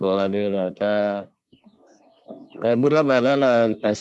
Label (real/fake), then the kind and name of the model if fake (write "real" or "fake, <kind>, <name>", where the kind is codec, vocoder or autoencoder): fake, codec, SNAC